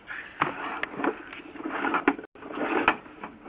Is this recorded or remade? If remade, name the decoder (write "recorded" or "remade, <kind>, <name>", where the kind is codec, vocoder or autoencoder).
recorded